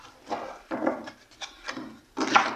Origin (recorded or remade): recorded